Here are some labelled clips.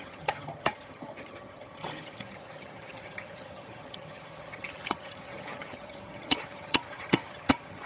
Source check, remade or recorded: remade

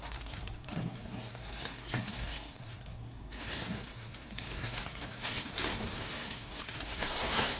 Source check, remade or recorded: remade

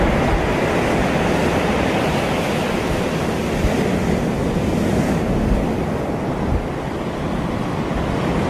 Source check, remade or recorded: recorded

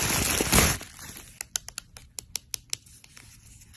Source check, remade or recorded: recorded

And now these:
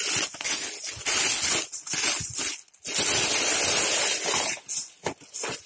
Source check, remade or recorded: recorded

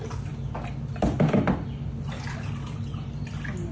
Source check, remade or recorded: recorded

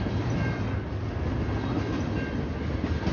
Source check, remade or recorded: recorded